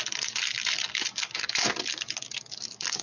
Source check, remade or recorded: recorded